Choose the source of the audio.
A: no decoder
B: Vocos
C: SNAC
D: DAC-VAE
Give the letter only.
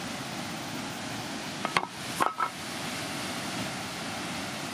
A